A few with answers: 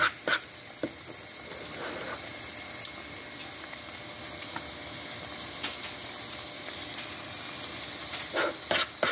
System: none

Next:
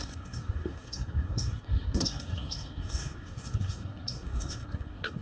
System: codec, SNAC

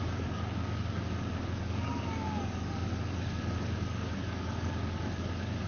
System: codec, DAC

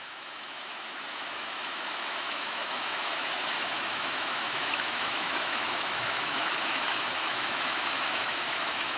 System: autoencoder, DAC-VAE